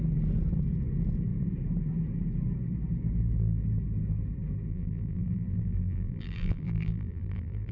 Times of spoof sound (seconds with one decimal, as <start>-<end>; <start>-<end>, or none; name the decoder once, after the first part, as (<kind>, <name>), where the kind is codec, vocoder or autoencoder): 4.7-7.7 (vocoder, BigVGAN v2)